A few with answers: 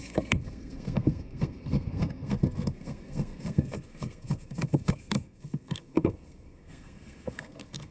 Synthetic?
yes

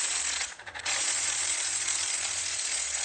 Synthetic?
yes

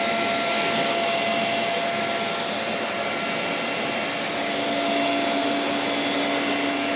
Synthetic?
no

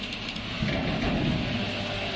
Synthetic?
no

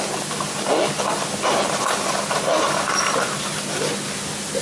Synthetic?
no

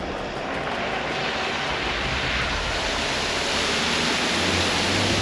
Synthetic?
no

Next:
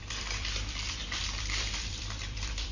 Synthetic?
yes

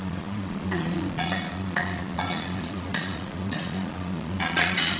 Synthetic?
yes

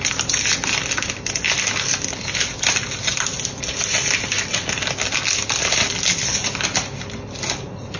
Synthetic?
no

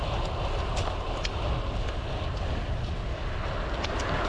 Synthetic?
no